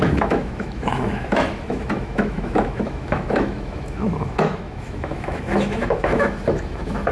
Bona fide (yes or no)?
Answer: no